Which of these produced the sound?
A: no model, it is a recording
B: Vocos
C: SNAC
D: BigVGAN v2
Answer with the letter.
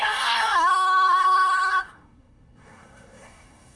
C